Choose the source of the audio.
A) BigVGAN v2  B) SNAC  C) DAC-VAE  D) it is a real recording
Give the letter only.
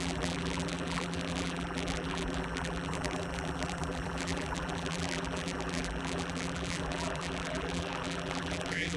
A